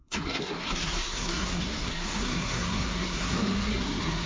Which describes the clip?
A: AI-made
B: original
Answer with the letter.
A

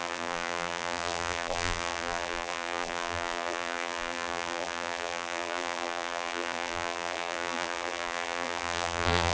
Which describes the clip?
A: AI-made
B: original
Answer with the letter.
A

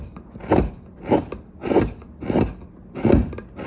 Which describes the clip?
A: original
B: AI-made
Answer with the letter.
A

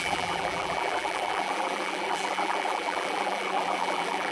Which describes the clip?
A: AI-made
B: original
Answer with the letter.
A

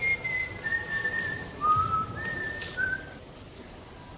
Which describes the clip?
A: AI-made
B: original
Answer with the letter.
B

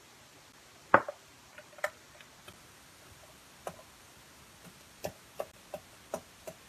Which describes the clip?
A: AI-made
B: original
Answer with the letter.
B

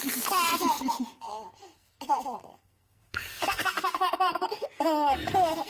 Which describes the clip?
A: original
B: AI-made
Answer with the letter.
B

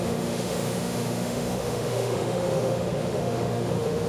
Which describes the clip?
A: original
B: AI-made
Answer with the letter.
B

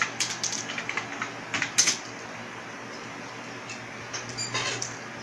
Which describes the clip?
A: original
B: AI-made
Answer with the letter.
A